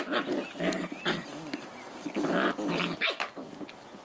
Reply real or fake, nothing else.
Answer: real